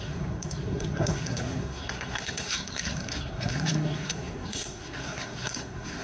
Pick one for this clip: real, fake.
fake